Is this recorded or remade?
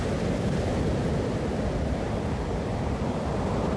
recorded